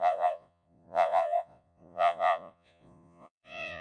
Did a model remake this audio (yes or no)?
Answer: yes